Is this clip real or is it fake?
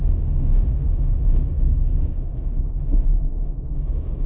fake